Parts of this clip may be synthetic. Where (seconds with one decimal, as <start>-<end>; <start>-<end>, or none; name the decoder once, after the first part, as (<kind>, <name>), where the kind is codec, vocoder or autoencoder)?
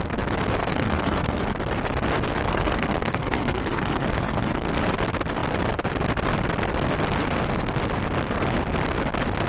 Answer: 0.6-1.4 (codec, SNAC); 2.4-4.7